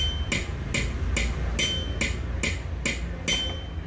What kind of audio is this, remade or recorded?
recorded